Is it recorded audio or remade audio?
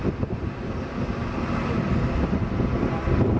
recorded